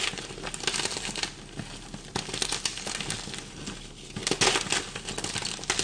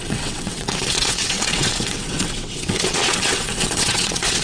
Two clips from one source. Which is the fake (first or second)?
second